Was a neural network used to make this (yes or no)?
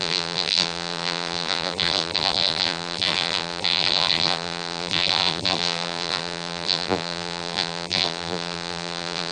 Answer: yes